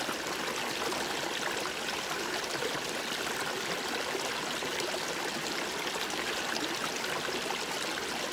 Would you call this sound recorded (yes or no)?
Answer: yes